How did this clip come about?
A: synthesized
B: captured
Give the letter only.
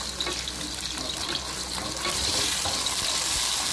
B